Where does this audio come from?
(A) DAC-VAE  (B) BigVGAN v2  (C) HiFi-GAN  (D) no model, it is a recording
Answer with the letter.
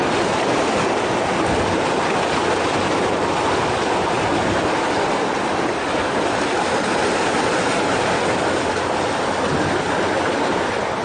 D